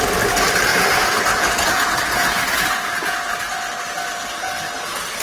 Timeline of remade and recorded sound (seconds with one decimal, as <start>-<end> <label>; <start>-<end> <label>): 0.0-0.7 recorded; 0.7-3.3 remade; 3.3-5.2 recorded